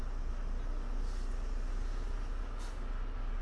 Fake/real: real